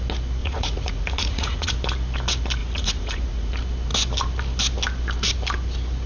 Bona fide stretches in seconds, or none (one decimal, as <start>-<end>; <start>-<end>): 0.0-0.4; 1.7-2.6; 3.5-6.1

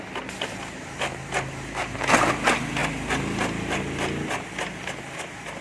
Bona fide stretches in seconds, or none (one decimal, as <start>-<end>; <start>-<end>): 0.0-5.6

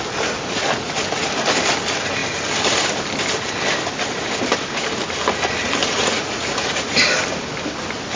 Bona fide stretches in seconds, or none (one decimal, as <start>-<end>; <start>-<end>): 0.0-5.8; 7.0-8.2

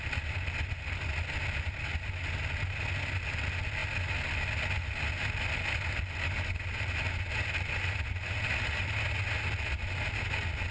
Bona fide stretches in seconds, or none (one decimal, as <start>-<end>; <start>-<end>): 0.0-10.7